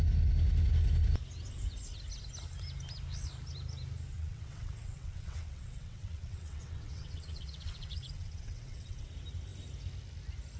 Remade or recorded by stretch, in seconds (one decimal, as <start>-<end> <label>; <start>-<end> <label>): 0.0-4.1 recorded; 4.1-9.1 remade; 9.1-10.6 recorded